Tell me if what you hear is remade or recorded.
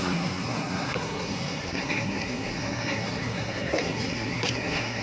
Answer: remade